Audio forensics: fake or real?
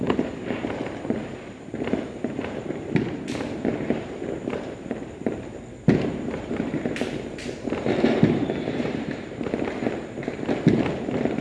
fake